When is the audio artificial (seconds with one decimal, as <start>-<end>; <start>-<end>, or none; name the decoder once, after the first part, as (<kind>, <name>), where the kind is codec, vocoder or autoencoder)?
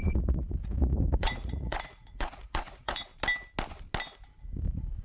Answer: 0.0-3.1 (vocoder, Vocos); 4.4-5.0